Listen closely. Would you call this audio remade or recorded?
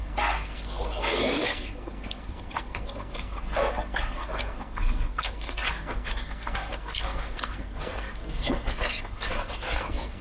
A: remade